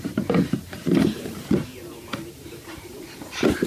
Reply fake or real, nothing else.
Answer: fake